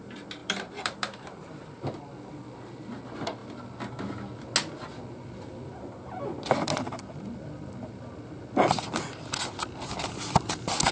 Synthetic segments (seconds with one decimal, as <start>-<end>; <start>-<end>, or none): 0.4-1.8